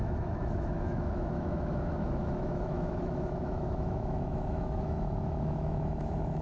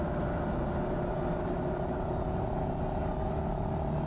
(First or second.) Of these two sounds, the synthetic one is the first